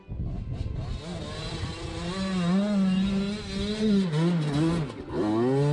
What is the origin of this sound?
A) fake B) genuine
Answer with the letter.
B